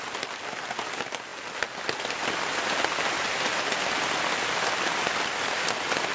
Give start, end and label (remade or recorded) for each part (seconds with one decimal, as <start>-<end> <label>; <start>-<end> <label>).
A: 0.0-6.1 recorded